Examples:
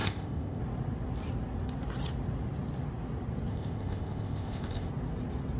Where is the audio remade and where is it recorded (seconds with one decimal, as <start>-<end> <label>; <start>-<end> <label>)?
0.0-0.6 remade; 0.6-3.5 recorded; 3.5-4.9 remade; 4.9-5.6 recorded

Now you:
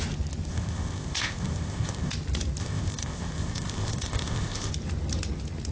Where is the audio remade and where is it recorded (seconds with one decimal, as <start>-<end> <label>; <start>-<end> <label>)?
0.0-0.5 recorded; 0.5-2.1 remade; 2.1-2.6 recorded; 2.6-4.7 remade; 4.7-5.7 recorded

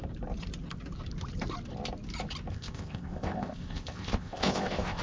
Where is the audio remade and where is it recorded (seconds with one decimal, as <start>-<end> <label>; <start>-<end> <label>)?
0.0-2.5 recorded; 2.5-5.0 remade

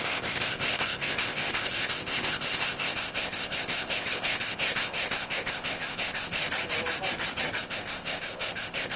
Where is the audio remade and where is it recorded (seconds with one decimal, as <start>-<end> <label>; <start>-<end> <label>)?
0.0-6.4 remade; 6.4-7.6 recorded; 7.6-9.0 remade